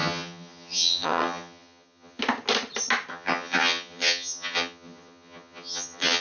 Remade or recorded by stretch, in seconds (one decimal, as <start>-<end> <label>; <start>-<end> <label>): 0.0-2.2 remade; 2.2-3.1 recorded; 3.1-6.2 remade